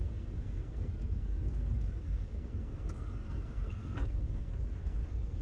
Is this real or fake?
fake